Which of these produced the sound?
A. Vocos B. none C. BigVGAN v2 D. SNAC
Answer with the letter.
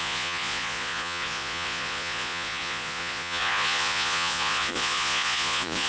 A